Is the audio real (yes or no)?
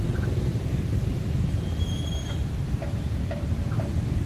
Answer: no